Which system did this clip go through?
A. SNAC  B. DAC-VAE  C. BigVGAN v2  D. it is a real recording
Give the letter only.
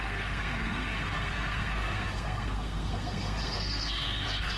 A